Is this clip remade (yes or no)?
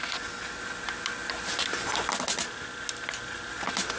no